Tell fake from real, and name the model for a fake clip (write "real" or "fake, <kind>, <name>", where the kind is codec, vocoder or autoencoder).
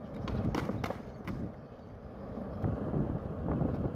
real